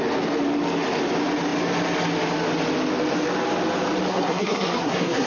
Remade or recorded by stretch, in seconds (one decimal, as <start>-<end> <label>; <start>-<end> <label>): 0.0-4.1 recorded; 4.1-5.3 remade